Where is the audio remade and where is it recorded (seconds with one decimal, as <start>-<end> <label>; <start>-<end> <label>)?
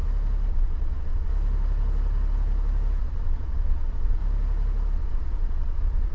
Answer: 0.0-0.5 recorded; 0.5-1.3 remade; 1.3-3.0 recorded; 3.0-4.2 remade; 4.2-4.9 recorded; 4.9-6.1 remade